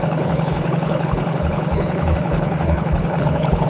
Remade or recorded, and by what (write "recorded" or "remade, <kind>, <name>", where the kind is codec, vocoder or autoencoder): remade, codec, HILCodec